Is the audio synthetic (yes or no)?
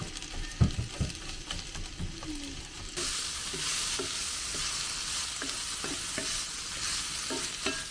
no